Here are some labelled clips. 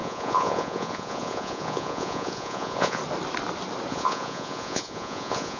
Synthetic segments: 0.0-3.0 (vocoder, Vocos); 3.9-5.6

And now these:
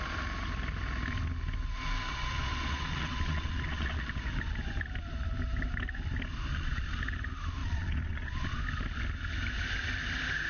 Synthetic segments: 2.1-4.2 (vocoder, Vocos); 6.5-7.0; 7.6-8.6

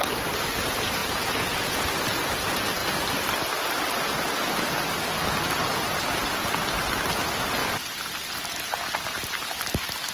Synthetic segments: 1.0-1.9 (vocoder, Vocos)

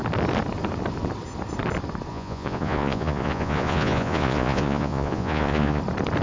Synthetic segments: 2.1-5.8 (vocoder, Vocos)

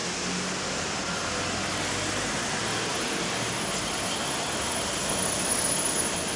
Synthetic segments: none

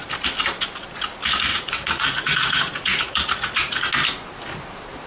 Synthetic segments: 1.5-3.8 (vocoder, Vocos)